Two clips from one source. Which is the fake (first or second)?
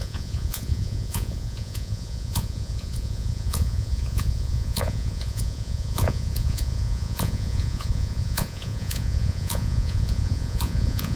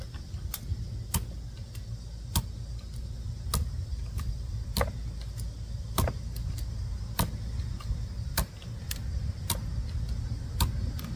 first